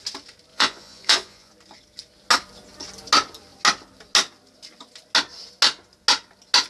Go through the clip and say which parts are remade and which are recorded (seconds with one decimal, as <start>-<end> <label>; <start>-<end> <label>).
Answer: 0.0-0.5 recorded; 0.5-1.5 remade; 1.5-6.7 recorded